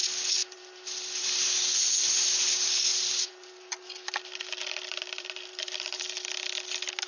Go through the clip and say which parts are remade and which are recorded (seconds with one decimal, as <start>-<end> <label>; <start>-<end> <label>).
0.0-0.4 recorded; 0.4-1.4 remade; 1.4-2.9 recorded; 2.9-6.0 remade; 6.0-7.1 recorded